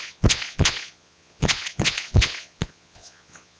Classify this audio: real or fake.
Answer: fake